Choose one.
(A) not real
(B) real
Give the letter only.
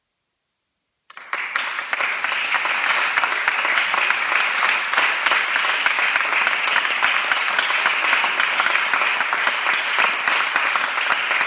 B